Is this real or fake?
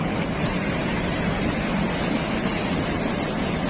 real